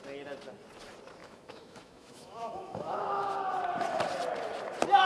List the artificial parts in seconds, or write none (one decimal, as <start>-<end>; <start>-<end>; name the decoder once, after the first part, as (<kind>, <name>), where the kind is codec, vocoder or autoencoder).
1.2-3.3 (autoencoder, DAC-VAE)